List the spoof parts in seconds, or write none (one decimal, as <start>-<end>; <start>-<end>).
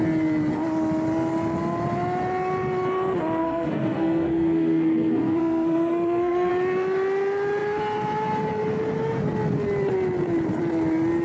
3.4-6.5